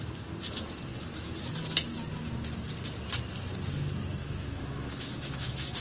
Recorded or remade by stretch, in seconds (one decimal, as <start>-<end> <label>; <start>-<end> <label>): 0.0-4.2 recorded; 4.2-5.8 remade